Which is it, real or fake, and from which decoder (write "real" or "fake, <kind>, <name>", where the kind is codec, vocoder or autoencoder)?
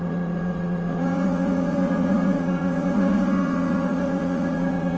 fake, vocoder, Vocos